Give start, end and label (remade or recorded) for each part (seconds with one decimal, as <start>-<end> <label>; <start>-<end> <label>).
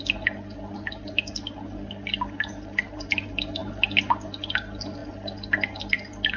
0.0-6.4 recorded